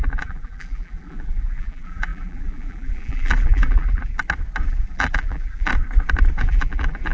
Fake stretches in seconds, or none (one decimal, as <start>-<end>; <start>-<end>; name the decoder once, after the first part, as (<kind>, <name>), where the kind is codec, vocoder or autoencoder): 0.0-4.2 (vocoder, BigVGAN v2); 4.7-5.7; 6.4-7.1